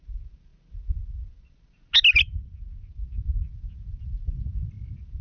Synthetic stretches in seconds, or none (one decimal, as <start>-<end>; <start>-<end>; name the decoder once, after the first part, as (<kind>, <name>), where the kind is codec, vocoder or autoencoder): none